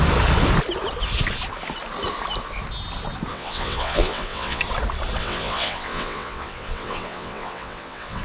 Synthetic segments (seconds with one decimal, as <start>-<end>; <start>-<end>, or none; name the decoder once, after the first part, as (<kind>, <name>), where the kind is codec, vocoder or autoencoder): 3.3-4.6 (vocoder, WaveNeXt); 5.2-8.2